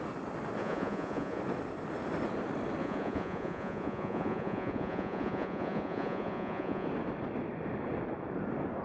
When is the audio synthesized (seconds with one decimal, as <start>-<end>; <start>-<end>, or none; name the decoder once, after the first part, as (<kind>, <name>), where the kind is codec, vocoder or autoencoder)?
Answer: 0.6-1.4 (vocoder, Vocos); 2.8-6.9